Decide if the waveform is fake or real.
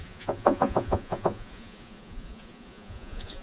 fake